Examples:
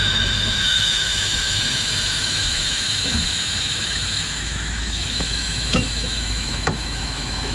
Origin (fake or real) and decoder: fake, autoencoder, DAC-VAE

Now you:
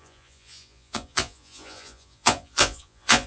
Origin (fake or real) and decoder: fake, vocoder, Vocos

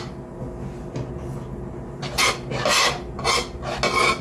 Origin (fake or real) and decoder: real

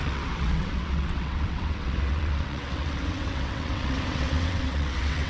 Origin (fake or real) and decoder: fake, vocoder, WaveNeXt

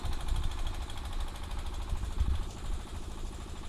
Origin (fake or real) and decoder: real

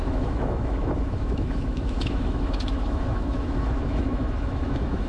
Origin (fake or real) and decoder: fake, autoencoder, DAC-VAE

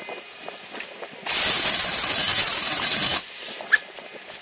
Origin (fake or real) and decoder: real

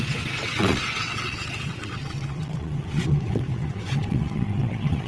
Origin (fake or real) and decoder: fake, vocoder, WaveNeXt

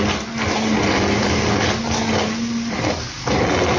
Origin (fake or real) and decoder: real